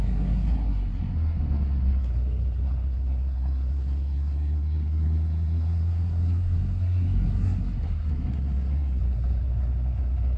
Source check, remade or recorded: remade